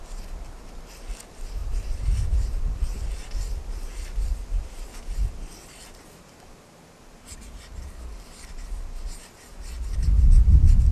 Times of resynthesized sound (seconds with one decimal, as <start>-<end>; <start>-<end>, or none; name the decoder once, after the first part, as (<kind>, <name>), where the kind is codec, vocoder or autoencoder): 1.6-3.0 (vocoder, BigVGAN v2)